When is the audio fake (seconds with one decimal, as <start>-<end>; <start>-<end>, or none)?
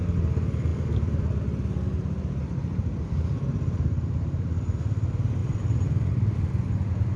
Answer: 5.4-7.2